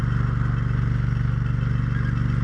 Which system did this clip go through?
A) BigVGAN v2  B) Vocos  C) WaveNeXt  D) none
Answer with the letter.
D